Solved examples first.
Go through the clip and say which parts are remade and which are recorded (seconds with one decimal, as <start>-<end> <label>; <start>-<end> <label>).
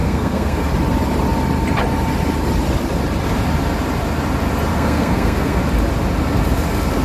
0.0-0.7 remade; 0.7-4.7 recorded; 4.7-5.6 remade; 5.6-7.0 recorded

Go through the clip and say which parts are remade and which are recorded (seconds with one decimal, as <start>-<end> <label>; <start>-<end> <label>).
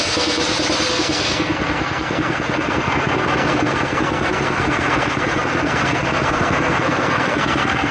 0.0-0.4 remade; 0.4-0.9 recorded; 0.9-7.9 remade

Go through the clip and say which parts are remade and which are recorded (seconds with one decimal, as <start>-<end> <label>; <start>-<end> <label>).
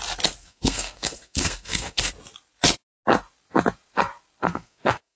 0.0-0.4 recorded; 0.4-2.1 remade; 2.1-4.4 recorded; 4.4-5.2 remade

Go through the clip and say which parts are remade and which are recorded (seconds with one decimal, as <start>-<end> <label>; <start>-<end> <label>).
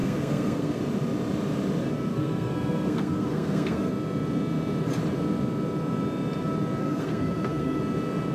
0.0-0.8 remade; 0.8-2.1 recorded; 2.1-3.9 remade; 3.9-6.8 recorded; 6.8-7.8 remade; 7.8-8.3 recorded